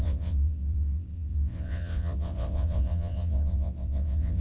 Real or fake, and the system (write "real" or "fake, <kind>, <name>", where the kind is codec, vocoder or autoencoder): fake, vocoder, WaveNeXt